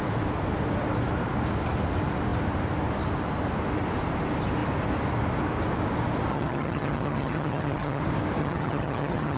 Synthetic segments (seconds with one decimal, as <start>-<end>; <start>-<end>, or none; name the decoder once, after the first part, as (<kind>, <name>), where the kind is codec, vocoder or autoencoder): 6.3-8.0 (vocoder, HiFi-GAN); 8.4-9.4